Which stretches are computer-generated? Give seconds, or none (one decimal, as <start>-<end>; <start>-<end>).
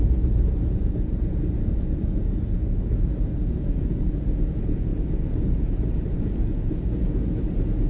0.0-7.9